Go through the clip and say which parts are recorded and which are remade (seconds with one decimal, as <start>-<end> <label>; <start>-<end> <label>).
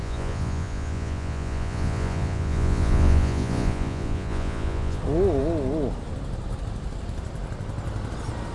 0.0-5.0 remade; 5.0-8.5 recorded